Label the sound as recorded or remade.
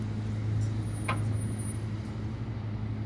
recorded